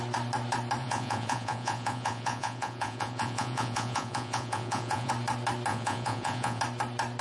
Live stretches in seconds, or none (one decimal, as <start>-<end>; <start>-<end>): 0.0-0.8; 5.1-5.7; 6.6-7.2